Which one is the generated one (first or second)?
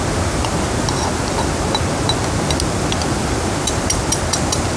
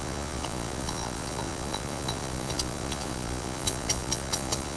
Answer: second